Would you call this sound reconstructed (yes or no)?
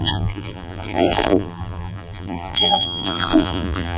yes